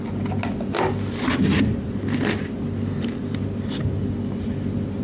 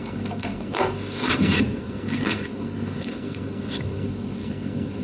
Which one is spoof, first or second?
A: second